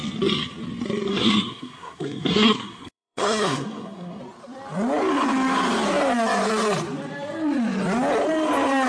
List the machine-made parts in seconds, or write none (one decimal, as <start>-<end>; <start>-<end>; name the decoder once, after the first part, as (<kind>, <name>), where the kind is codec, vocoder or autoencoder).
1.1-4.2 (codec, SNAC)